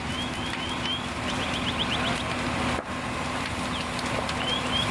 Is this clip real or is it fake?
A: real